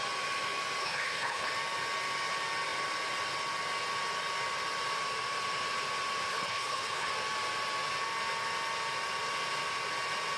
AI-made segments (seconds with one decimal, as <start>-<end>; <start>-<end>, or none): 0.8-1.5; 6.3-7.1